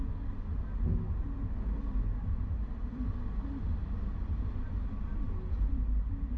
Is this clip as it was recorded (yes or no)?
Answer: yes